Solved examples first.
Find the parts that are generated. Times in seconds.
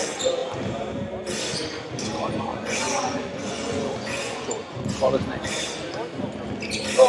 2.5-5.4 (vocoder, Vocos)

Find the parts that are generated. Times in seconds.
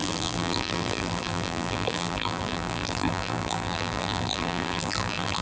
0.0-5.4 (vocoder, BigVGAN v2)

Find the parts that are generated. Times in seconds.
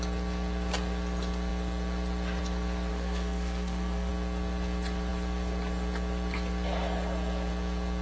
2.9-4.1 (codec, SNAC)